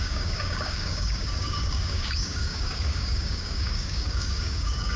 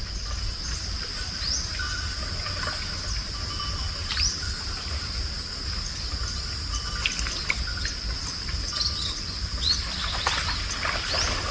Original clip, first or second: second